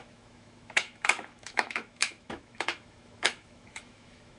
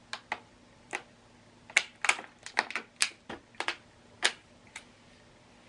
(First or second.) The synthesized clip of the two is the first